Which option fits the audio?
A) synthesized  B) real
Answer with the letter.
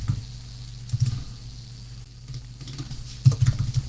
B